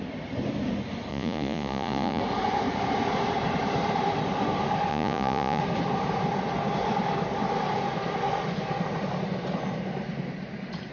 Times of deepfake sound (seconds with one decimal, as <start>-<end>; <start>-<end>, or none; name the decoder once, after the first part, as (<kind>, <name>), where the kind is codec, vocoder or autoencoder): 1.1-2.2 (vocoder, Vocos); 4.9-5.6